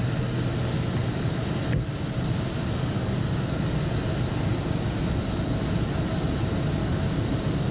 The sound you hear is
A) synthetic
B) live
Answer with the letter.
B